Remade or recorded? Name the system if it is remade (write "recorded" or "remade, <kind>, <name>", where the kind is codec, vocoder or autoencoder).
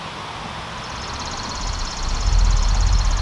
recorded